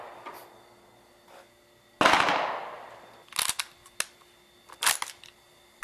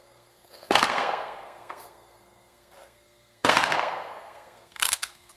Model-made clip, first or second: second